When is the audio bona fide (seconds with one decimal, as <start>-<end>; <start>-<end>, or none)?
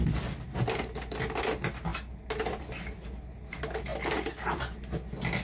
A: 0.0-5.4